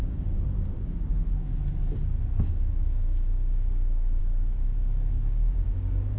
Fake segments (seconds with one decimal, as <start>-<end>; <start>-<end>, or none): 0.0-1.5; 2.5-4.2; 5.1-6.2